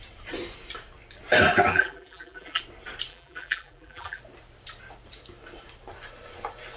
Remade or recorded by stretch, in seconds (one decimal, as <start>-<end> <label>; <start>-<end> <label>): 0.0-1.7 recorded; 1.7-2.6 remade; 2.6-3.1 recorded; 3.1-4.2 remade; 4.2-6.8 recorded